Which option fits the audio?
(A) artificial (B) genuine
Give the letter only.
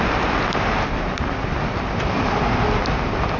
B